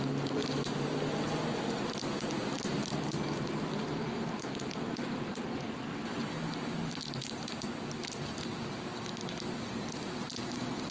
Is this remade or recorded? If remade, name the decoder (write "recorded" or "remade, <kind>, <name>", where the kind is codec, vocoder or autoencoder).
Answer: recorded